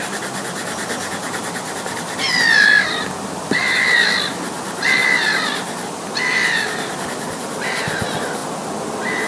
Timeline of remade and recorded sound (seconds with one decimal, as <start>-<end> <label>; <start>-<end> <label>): 0.0-9.3 recorded